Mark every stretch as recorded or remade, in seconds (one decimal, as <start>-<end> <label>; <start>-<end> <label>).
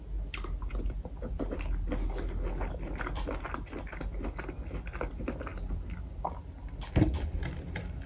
0.0-8.1 recorded